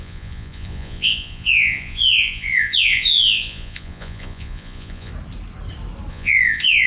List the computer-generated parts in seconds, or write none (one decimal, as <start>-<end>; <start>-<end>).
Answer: 0.0-5.1; 6.1-6.9